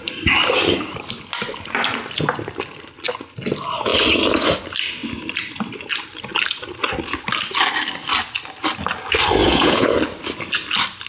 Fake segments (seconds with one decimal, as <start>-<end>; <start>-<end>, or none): 9.4-9.9